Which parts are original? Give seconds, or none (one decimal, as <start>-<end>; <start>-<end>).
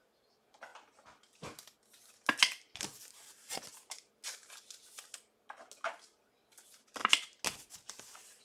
0.0-8.4